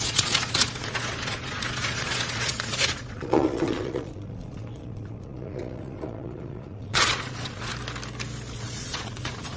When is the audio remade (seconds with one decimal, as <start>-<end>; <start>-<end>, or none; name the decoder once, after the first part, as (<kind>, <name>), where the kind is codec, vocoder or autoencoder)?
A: 0.0-7.7 (vocoder, Vocos); 8.5-9.6